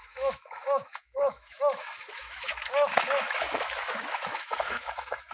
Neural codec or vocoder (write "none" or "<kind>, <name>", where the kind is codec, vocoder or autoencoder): autoencoder, DAC-VAE